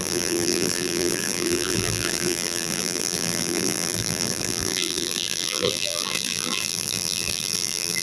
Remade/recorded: remade